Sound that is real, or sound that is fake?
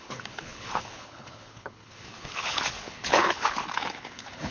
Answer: fake